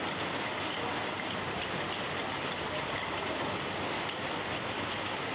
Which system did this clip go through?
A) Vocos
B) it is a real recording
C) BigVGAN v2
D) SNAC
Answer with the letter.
B